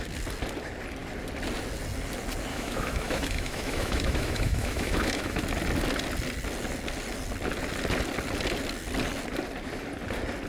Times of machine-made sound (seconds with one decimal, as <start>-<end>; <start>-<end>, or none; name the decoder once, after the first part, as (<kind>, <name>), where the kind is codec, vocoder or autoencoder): 2.5-5.4 (autoencoder, DAC-VAE)